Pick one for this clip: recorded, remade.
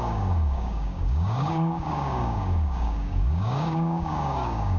remade